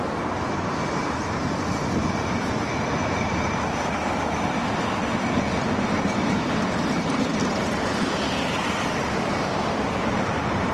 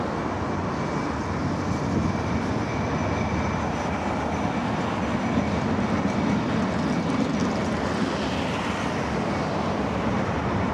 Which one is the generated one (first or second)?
first